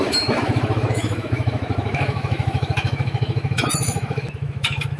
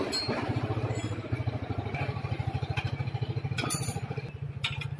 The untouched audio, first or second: second